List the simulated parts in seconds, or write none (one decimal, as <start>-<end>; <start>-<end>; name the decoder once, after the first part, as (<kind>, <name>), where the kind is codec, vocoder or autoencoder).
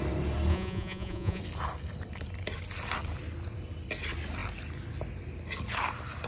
0.5-1.4 (vocoder, Vocos)